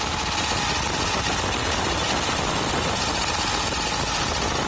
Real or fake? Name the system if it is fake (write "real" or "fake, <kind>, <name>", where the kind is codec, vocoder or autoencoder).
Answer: real